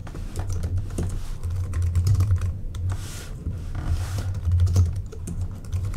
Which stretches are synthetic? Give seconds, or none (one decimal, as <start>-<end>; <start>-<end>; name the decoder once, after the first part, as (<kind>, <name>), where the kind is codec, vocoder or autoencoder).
2.1-6.0 (vocoder, BigVGAN v2)